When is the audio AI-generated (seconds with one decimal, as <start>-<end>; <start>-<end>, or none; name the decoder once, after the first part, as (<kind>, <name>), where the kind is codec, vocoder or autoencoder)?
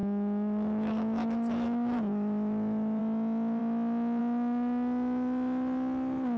0.0-3.0 (autoencoder, DAC-VAE)